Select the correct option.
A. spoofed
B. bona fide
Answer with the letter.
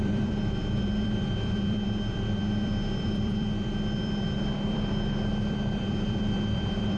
A